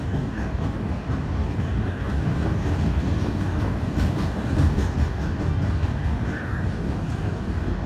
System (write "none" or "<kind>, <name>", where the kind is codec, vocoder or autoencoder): codec, DAC